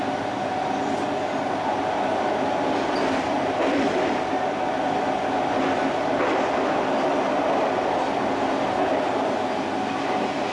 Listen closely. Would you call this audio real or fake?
real